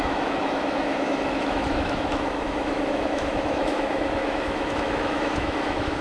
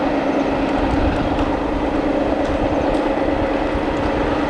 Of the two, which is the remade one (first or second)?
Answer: first